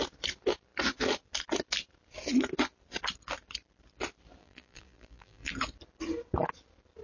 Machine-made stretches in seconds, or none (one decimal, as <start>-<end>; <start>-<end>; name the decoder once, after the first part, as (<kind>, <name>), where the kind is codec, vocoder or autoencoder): 4.4-5.5 (vocoder, BigVGAN v2)